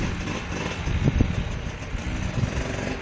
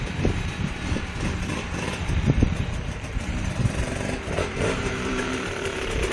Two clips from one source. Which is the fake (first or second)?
second